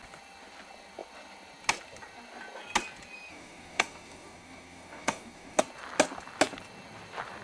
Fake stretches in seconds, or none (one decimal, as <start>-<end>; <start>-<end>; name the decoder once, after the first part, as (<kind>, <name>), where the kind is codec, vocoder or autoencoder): 3.3-5.6 (codec, DAC)